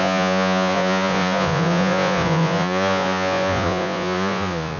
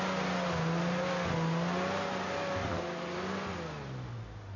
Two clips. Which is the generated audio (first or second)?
first